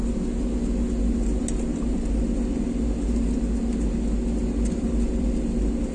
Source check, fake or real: real